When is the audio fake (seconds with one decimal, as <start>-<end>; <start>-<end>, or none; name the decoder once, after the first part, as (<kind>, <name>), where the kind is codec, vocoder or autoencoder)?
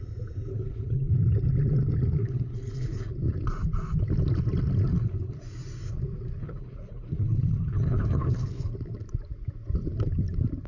0.5-1.1 (codec, HILCodec); 2.2-3.1; 4.9-5.4; 6.4-8.7